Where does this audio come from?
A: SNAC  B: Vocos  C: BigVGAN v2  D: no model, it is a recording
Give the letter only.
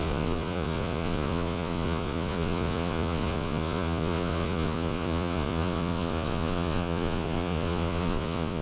B